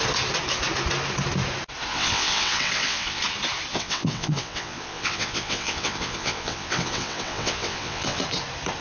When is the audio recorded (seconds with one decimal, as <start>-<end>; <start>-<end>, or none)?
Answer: 0.0-1.9; 3.2-3.7; 8.2-8.8